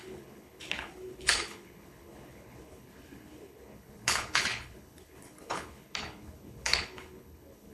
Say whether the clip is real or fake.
fake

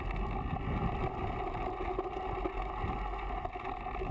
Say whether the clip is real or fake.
real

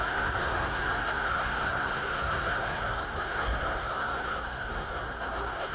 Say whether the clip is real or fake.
fake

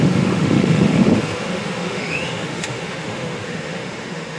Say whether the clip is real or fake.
fake